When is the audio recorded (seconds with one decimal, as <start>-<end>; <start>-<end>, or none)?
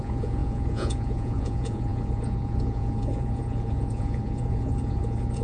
none